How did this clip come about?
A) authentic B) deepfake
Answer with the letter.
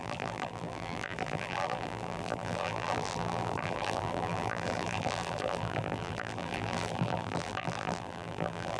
B